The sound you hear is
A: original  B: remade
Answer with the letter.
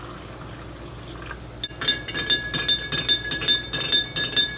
A